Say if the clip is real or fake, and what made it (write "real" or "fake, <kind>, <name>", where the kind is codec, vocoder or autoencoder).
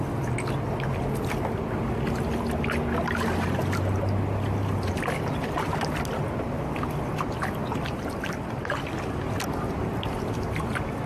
real